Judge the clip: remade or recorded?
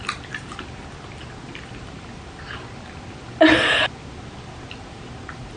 recorded